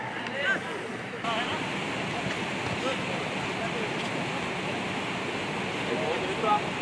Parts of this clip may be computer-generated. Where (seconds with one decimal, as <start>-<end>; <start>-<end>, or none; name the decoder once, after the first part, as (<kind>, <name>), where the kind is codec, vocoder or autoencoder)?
none